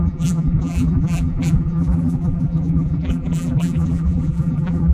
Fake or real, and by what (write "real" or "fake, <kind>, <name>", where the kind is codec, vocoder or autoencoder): fake, vocoder, BigVGAN v2